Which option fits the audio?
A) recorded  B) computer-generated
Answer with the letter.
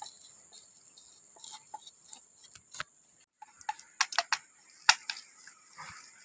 A